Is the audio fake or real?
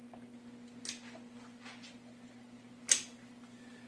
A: real